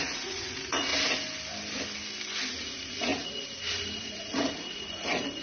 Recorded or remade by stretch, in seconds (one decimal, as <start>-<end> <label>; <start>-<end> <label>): 0.0-0.9 remade; 0.9-2.6 recorded; 2.6-5.4 remade